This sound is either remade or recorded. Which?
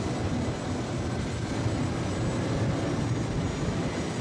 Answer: recorded